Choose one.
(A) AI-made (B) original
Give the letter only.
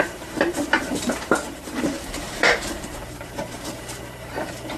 A